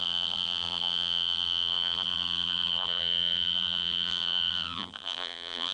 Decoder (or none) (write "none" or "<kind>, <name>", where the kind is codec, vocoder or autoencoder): vocoder, BigVGAN v2